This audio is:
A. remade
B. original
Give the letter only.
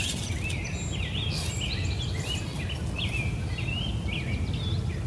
B